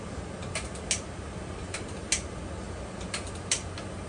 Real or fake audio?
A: real